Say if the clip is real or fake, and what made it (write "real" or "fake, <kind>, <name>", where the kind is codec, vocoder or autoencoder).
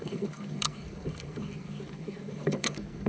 fake, codec, SNAC